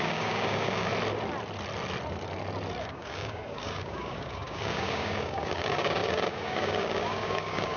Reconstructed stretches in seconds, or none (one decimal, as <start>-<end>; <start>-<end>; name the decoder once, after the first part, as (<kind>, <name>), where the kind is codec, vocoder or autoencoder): 0.0-0.9 (codec, DAC); 2.8-7.8